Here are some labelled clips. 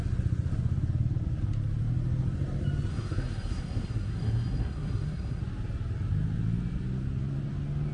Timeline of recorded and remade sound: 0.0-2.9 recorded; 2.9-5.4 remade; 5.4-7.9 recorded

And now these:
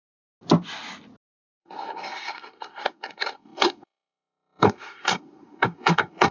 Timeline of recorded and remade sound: 0.0-1.6 recorded; 1.6-6.3 remade

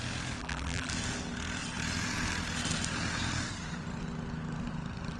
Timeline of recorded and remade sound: 0.0-0.4 recorded; 0.4-0.9 remade; 0.9-5.2 recorded